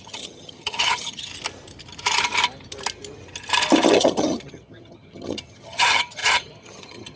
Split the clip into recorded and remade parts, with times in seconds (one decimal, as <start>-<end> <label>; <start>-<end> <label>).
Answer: 0.0-1.3 remade; 1.3-3.9 recorded; 3.9-7.2 remade